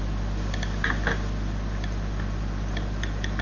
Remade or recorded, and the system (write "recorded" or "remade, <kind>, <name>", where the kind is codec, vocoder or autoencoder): recorded